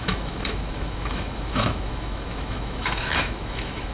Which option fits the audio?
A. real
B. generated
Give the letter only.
B